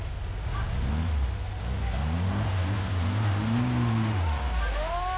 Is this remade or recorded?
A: recorded